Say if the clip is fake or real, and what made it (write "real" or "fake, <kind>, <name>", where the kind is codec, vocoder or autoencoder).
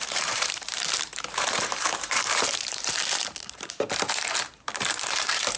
fake, vocoder, BigVGAN v2